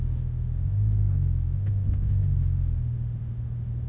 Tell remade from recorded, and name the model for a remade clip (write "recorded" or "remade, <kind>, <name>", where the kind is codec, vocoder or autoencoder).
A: remade, autoencoder, DAC-VAE